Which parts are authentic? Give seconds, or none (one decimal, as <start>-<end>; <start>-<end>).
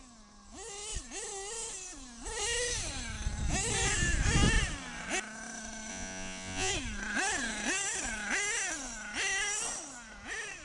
0.0-5.9; 6.7-10.6